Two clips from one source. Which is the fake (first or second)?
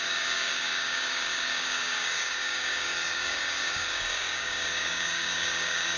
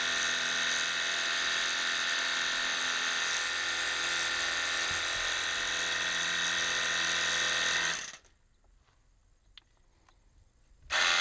first